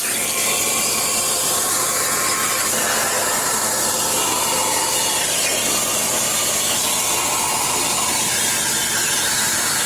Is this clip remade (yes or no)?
no